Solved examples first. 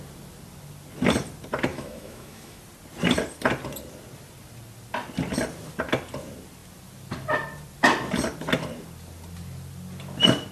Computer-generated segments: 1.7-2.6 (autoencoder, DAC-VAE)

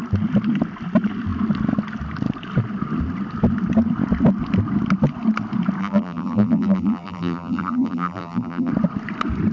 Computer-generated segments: 5.8-8.7 (vocoder, BigVGAN v2)